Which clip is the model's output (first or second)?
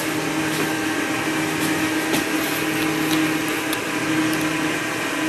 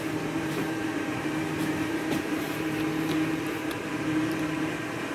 second